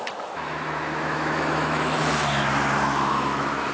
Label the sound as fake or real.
fake